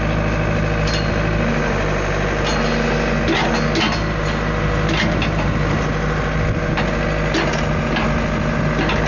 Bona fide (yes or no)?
yes